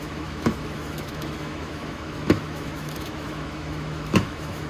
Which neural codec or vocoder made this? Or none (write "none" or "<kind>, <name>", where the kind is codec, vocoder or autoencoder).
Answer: autoencoder, DAC-VAE